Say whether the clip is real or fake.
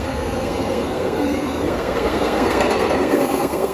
fake